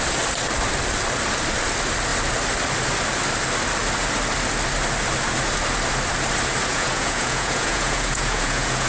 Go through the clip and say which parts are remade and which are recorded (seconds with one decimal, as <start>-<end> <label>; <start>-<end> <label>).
0.0-6.7 recorded; 6.7-8.9 remade